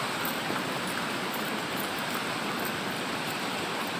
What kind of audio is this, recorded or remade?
remade